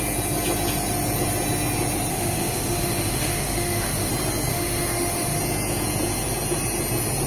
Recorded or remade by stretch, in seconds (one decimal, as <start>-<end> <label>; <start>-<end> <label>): 0.0-2.1 recorded; 2.1-4.1 remade; 4.1-4.5 recorded; 4.5-5.4 remade; 5.4-7.3 recorded

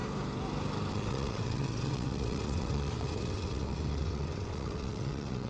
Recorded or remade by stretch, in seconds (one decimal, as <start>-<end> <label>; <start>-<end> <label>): 0.0-0.9 recorded; 0.9-5.5 remade

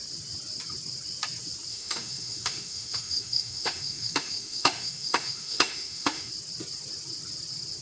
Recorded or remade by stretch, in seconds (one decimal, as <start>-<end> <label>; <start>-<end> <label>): 0.0-1.7 recorded; 1.7-6.3 remade; 6.3-7.8 recorded

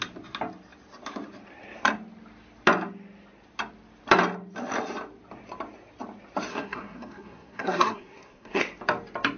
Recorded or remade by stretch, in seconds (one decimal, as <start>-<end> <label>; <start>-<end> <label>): 0.0-6.5 recorded; 6.5-8.6 remade; 8.6-9.4 recorded

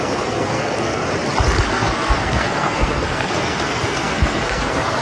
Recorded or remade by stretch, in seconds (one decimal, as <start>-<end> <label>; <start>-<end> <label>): 0.0-1.0 remade; 1.0-1.7 recorded; 1.7-5.0 remade